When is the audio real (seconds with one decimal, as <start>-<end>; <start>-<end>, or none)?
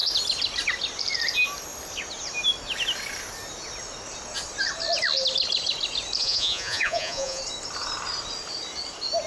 0.0-6.2; 7.4-9.3